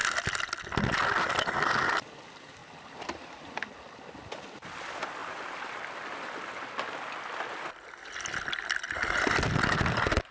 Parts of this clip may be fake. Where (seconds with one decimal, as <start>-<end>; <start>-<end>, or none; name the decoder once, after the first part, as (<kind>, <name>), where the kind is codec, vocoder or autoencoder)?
none